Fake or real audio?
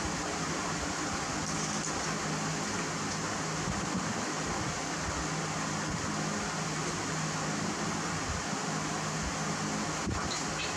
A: real